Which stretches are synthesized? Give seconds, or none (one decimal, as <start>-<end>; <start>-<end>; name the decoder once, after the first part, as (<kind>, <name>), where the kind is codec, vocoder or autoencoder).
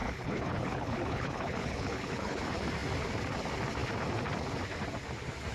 0.0-2.4 (codec, HILCodec)